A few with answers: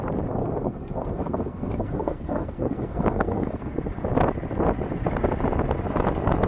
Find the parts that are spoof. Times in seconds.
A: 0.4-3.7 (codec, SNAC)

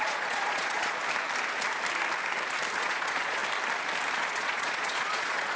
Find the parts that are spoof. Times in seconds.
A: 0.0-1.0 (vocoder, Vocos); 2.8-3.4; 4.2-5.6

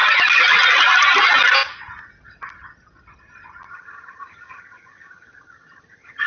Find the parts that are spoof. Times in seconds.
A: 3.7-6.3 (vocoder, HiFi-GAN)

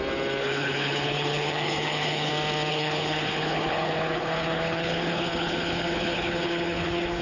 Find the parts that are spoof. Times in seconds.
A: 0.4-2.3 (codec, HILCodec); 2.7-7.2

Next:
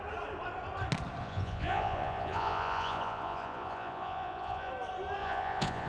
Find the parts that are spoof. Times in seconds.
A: 1.2-4.7 (vocoder, Vocos); 5.2-5.9

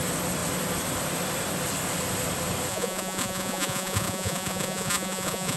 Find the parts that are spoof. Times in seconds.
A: 2.7-5.6 (vocoder, Vocos)